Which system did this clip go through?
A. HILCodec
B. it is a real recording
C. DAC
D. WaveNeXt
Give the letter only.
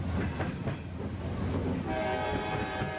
B